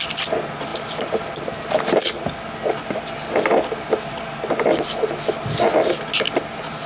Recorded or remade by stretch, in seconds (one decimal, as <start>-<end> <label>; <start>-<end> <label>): 0.0-6.9 recorded